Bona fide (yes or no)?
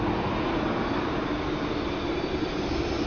yes